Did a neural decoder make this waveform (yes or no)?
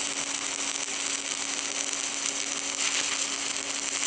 no